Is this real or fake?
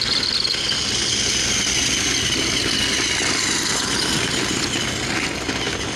real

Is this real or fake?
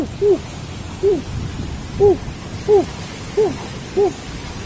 real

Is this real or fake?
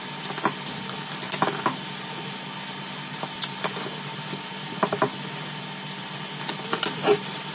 real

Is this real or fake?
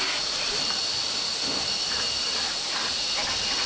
real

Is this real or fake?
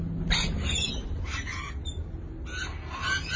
real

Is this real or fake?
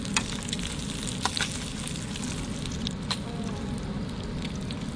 real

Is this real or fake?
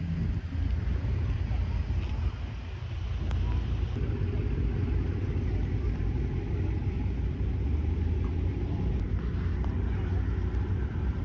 real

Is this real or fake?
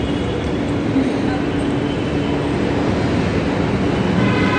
real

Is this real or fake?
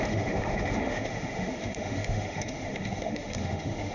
fake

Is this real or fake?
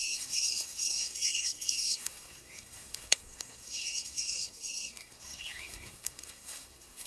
fake